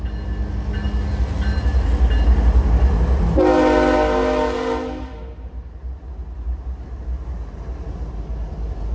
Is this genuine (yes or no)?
yes